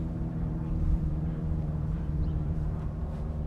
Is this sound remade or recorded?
remade